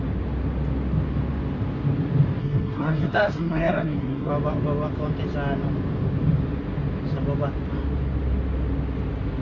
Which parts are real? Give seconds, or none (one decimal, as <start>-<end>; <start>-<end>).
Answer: 0.0-2.4; 4.3-9.4